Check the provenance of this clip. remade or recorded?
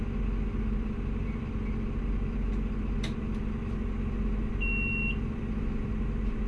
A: recorded